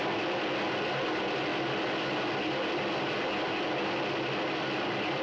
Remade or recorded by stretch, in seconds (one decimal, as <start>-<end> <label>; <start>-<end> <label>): 0.0-5.2 recorded